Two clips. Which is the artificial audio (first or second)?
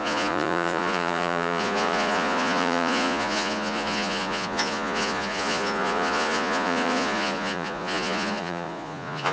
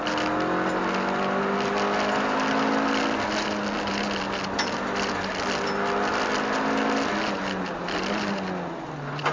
first